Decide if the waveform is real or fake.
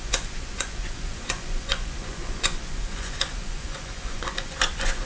fake